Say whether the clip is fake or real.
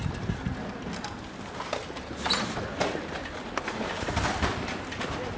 real